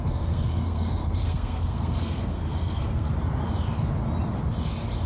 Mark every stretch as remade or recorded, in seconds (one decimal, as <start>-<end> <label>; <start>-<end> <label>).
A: 0.0-3.1 remade; 3.1-5.1 recorded